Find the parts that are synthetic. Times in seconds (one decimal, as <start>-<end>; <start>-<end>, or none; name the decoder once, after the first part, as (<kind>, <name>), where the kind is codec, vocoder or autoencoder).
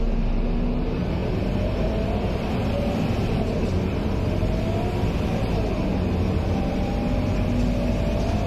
1.2-4.6 (vocoder, BigVGAN v2)